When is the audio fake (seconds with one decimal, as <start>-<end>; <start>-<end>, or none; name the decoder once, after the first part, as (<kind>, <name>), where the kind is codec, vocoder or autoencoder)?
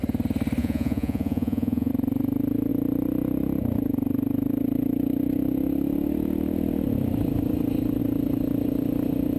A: 0.6-1.9 (vocoder, Vocos)